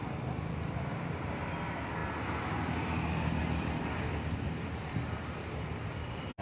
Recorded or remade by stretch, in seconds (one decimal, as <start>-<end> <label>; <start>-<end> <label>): 0.0-0.9 recorded; 0.9-1.4 remade; 1.4-6.4 recorded